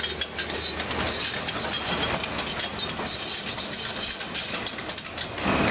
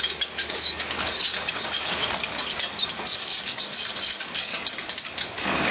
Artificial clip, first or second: second